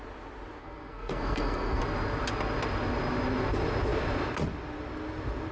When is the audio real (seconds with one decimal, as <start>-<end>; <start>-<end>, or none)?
0.0-0.6; 1.8-5.5